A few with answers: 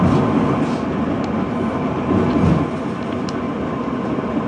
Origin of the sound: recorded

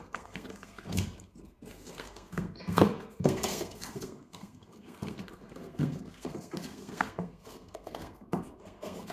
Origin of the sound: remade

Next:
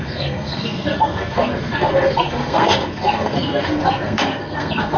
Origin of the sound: remade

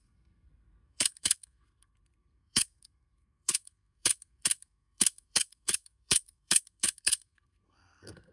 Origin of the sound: remade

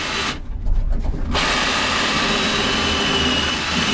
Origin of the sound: recorded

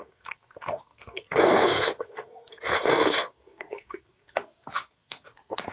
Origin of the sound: remade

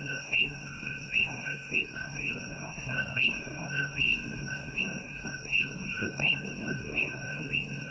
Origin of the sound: remade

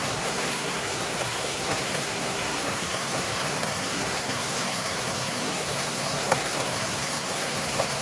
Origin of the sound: remade